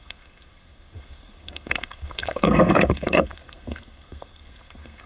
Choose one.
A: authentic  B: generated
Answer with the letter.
B